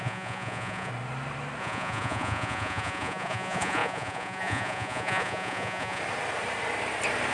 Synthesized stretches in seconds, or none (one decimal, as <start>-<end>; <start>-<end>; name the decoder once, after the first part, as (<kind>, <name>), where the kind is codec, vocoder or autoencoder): 0.0-0.9 (vocoder, Vocos); 1.6-6.0